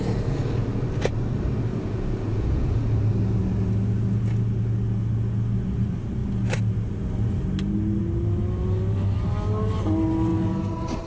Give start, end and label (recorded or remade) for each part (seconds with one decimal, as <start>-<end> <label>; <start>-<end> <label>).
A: 0.0-1.7 recorded; 1.7-2.8 remade; 2.8-11.1 recorded